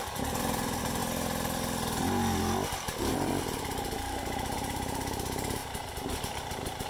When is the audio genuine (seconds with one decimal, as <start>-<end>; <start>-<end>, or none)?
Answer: 1.0-3.0; 5.6-6.2